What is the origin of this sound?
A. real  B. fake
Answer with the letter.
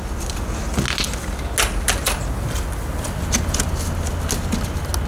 A